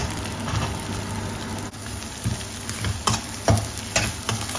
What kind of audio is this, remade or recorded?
recorded